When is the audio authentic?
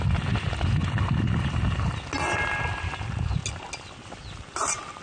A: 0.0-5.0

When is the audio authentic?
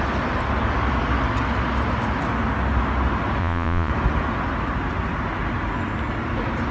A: 0.0-3.4; 3.9-6.7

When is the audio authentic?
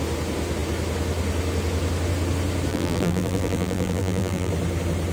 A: 0.0-2.7; 4.5-5.1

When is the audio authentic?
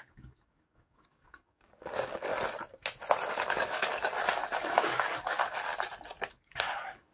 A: 2.3-3.3; 4.1-4.6; 5.7-6.3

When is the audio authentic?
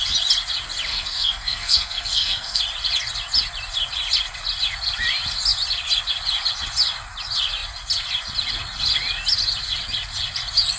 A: 0.0-0.9; 2.6-10.8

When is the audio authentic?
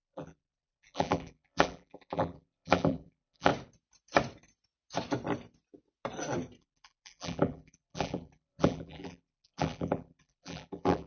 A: 3.5-6.6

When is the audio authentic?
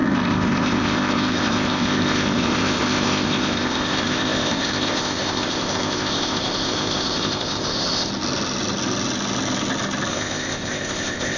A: 8.1-10.1